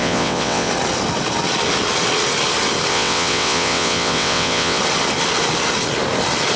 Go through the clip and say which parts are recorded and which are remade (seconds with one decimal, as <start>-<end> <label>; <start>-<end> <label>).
0.0-0.7 remade; 0.7-2.9 recorded; 2.9-4.8 remade; 4.8-6.6 recorded